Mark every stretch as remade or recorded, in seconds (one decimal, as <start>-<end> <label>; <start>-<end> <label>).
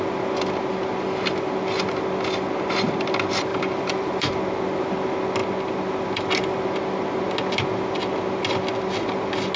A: 0.0-3.5 recorded; 3.5-4.1 remade; 4.1-9.6 recorded